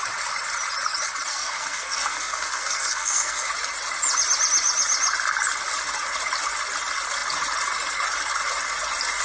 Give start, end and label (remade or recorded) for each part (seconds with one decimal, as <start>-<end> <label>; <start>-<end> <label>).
0.0-1.3 recorded; 1.3-3.5 remade; 3.5-9.2 recorded